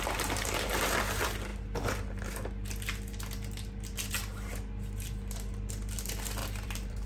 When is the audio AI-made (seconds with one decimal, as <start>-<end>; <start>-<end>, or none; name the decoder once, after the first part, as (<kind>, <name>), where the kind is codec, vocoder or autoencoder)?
6.4-7.1 (vocoder, BigVGAN v2)